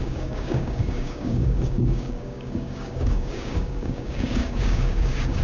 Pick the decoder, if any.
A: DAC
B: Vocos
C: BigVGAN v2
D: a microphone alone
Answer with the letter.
A